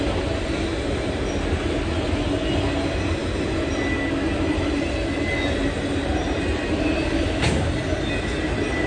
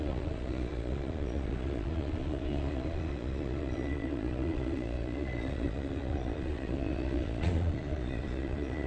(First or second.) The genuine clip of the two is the first